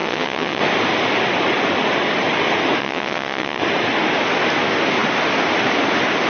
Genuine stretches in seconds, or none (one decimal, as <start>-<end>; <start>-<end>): 0.6-2.8; 3.6-6.3